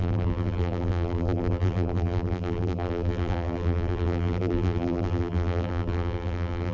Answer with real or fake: fake